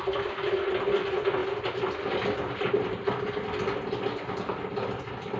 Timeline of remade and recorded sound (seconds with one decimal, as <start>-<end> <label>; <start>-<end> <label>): 0.0-5.4 recorded